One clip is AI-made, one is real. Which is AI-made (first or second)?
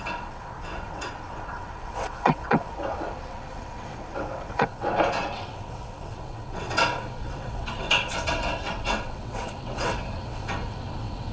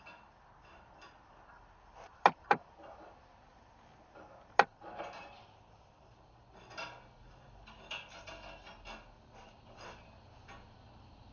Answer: first